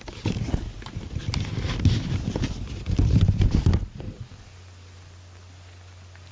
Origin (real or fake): real